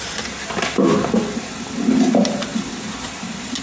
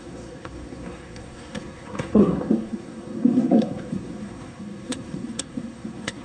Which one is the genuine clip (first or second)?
first